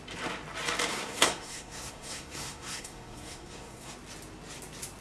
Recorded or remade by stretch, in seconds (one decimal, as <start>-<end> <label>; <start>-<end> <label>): 0.0-0.9 recorded; 0.9-3.9 remade; 3.9-5.0 recorded